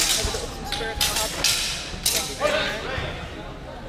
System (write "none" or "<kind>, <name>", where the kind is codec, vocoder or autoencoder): none